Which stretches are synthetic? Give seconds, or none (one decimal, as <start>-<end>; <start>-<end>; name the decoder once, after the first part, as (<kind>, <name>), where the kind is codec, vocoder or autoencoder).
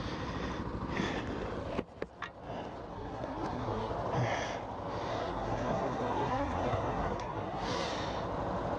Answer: 2.9-3.9 (codec, SNAC); 5.1-7.9